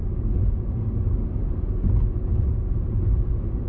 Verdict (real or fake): real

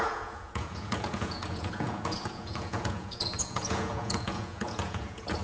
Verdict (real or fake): fake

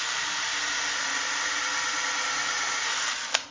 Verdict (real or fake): real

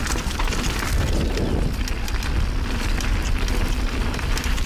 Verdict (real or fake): real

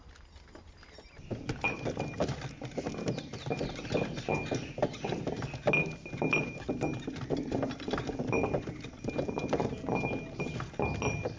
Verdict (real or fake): real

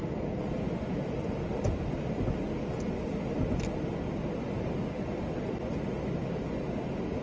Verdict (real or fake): real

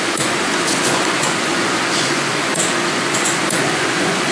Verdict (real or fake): fake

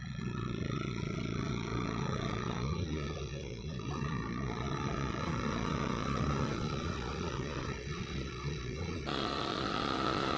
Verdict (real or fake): fake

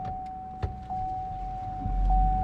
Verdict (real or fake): real